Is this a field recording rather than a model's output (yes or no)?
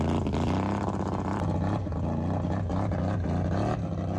yes